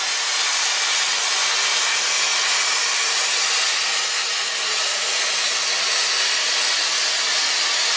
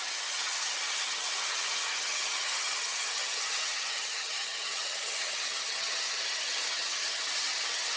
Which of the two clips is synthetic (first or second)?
second